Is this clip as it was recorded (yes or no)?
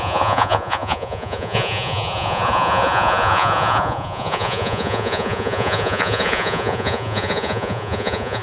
no